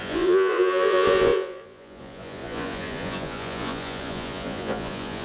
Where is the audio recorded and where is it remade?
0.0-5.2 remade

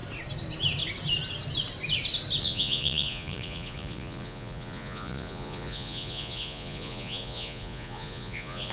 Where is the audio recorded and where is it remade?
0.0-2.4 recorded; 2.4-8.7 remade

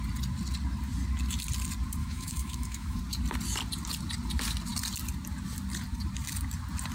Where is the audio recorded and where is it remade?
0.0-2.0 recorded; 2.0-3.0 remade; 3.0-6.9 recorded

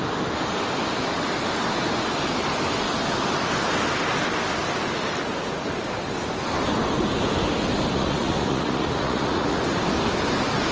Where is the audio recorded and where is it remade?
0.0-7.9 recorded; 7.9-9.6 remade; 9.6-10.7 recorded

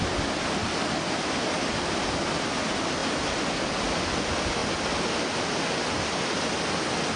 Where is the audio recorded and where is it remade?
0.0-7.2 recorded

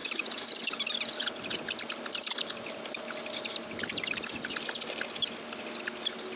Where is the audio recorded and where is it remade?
0.0-6.4 recorded

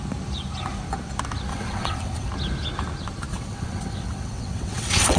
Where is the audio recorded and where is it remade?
0.0-1.5 recorded; 1.5-2.3 remade; 2.3-3.3 recorded; 3.3-5.2 remade

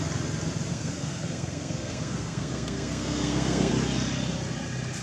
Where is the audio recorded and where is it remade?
0.0-0.7 recorded; 0.7-3.7 remade; 3.7-5.0 recorded